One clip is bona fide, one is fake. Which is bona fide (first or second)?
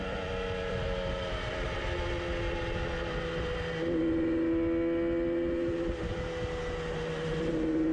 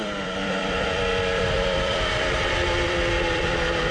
first